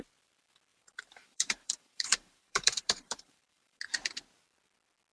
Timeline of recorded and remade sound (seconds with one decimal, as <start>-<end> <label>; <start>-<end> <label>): 0.0-0.7 recorded; 0.7-3.8 remade; 3.8-5.1 recorded